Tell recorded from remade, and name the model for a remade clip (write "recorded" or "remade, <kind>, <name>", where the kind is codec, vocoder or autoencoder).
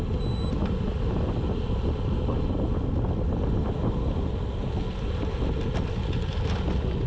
recorded